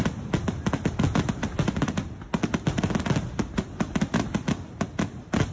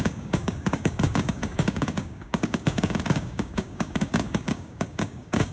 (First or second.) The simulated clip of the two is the second